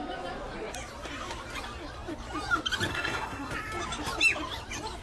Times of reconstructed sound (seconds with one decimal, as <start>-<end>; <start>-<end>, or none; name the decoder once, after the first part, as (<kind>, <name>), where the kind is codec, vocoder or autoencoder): 2.9-3.5 (codec, SNAC)